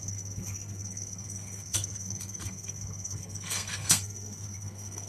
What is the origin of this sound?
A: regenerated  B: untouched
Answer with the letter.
A